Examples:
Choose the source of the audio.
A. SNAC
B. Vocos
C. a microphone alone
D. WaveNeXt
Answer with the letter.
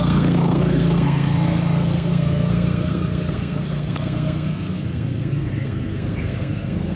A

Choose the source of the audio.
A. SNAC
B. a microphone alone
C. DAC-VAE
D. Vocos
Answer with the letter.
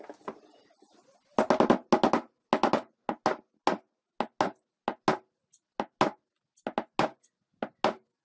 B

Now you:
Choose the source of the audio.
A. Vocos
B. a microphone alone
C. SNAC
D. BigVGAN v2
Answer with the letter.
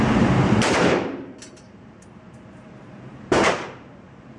D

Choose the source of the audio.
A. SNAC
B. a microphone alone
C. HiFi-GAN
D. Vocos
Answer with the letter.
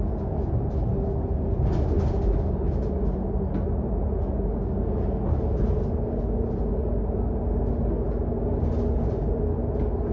B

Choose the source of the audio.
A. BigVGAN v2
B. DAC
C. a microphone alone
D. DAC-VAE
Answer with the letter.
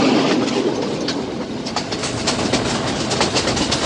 C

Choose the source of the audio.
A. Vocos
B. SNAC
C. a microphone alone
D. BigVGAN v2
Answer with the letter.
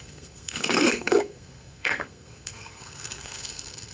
B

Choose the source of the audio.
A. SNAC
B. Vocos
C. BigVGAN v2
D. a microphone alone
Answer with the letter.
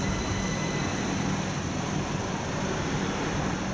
C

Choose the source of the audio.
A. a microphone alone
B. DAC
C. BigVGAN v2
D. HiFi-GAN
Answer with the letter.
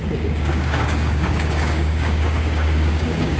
B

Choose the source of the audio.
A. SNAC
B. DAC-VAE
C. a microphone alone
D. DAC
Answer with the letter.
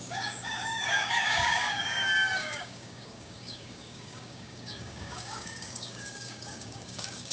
D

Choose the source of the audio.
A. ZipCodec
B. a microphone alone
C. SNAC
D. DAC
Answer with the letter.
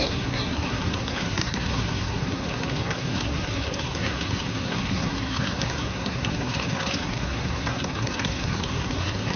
C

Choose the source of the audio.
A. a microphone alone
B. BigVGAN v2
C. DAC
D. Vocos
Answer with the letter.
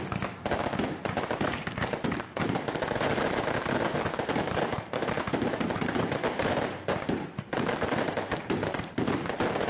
B